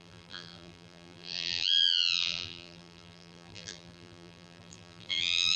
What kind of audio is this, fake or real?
fake